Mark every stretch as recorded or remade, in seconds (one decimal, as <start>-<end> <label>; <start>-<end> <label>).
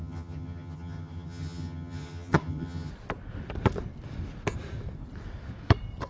0.0-2.9 remade; 2.9-6.1 recorded